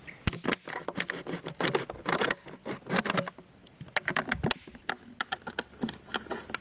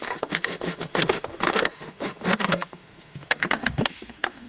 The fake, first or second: second